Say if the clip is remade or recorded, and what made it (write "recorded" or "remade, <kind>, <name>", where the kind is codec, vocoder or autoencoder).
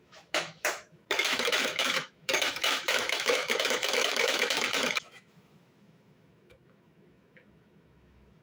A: remade, autoencoder, DAC-VAE